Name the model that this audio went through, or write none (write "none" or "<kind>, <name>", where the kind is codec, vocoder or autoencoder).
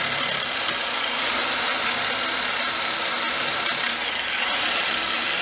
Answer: none